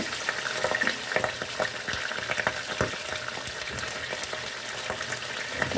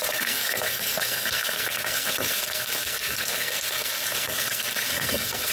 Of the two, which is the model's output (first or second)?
second